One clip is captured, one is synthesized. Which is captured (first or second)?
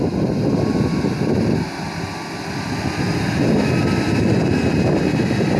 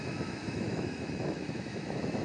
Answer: first